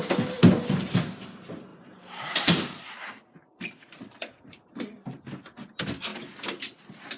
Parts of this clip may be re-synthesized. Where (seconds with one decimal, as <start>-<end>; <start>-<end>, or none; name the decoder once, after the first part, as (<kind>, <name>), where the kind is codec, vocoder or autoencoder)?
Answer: 1.7-5.2 (vocoder, BigVGAN v2)